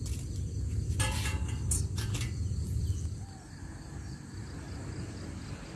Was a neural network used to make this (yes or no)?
no